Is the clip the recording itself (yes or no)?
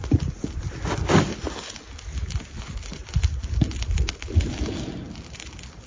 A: yes